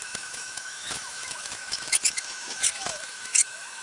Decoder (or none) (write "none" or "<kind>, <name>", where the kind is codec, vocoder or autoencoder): autoencoder, DAC-VAE